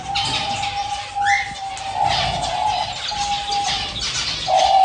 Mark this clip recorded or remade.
recorded